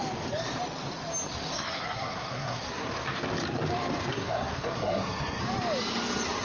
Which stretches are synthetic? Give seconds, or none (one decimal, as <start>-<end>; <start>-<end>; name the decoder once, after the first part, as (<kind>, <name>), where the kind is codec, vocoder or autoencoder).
1.5-2.9 (codec, SNAC); 4.1-5.4